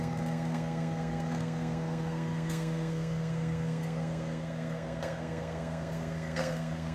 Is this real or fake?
fake